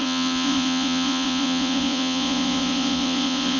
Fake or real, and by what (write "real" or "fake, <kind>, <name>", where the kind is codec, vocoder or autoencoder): fake, vocoder, Vocos